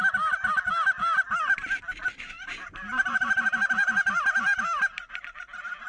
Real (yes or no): yes